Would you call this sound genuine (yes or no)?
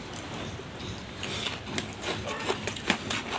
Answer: yes